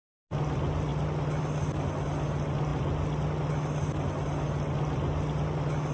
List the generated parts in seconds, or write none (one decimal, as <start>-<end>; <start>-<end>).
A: none